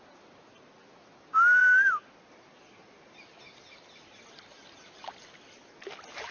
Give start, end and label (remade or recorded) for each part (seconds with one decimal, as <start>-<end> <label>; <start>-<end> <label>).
0.0-6.3 recorded

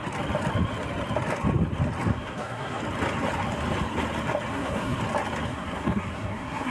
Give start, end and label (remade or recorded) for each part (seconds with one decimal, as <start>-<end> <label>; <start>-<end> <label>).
0.0-2.1 recorded; 2.1-2.8 remade; 2.8-4.5 recorded; 4.5-5.0 remade; 5.0-5.5 recorded; 5.5-6.7 remade

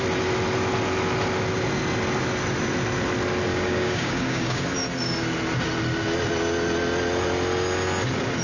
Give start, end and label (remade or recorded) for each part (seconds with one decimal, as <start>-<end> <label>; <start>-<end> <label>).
0.0-3.5 recorded; 3.5-4.6 remade; 4.6-8.4 recorded

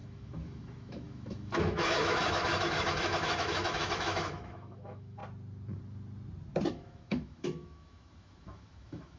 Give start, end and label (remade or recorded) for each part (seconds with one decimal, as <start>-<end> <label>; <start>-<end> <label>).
0.0-5.2 remade; 5.2-6.7 recorded; 6.7-9.2 remade

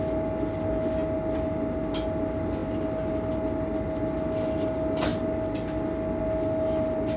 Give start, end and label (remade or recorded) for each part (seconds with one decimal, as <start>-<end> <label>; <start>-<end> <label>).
0.0-7.2 recorded